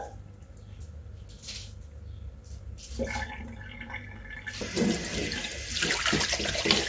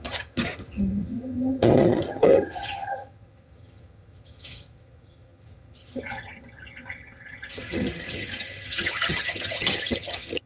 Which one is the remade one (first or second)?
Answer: second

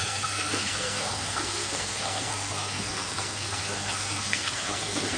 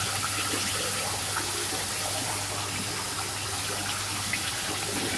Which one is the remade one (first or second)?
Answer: first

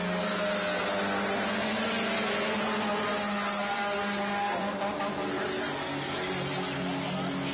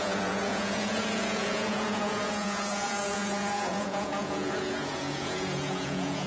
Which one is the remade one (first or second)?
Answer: second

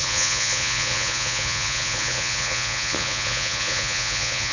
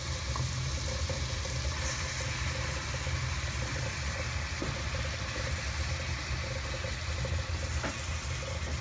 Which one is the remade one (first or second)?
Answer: first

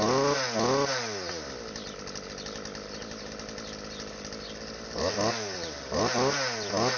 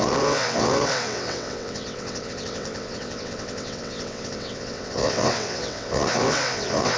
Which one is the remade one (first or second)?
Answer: second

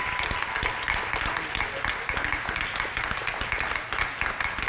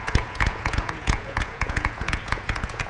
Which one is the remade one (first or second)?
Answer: second